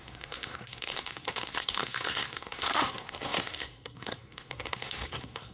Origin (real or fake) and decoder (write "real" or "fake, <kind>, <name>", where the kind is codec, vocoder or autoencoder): fake, codec, SNAC